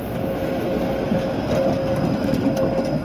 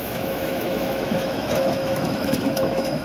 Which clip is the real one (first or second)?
first